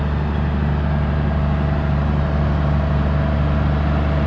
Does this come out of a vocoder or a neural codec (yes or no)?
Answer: no